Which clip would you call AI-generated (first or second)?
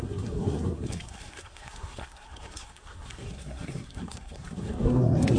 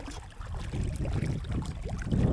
first